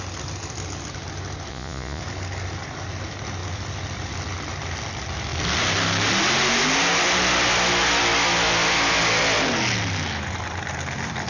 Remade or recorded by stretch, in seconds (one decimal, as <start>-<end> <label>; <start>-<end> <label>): 0.0-1.5 recorded; 1.5-2.0 remade; 2.0-11.3 recorded